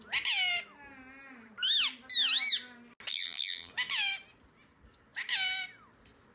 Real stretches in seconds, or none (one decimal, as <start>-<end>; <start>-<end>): 0.0-3.1; 3.7-6.3